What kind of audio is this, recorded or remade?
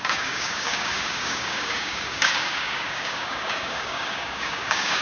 remade